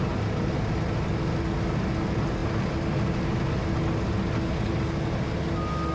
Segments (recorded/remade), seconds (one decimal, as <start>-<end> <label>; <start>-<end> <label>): 0.0-5.9 recorded